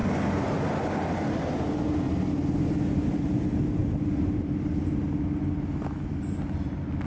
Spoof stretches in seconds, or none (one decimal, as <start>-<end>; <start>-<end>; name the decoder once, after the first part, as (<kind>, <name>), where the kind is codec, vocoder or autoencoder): none